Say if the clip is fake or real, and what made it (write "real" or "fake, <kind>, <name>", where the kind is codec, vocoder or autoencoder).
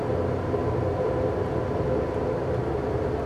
real